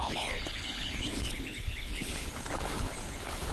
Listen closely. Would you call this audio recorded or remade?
remade